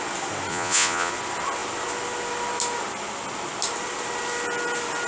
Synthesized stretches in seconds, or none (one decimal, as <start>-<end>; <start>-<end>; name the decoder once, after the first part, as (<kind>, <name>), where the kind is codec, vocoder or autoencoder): 0.5-1.1 (vocoder, Vocos)